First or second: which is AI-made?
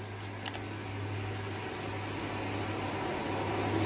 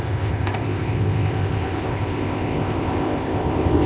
second